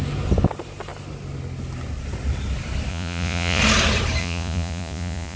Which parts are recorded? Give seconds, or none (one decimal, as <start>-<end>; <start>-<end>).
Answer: 0.0-2.9; 3.6-4.2